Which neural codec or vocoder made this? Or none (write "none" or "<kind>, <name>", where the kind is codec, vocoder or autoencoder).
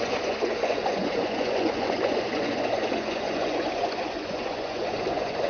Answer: vocoder, Vocos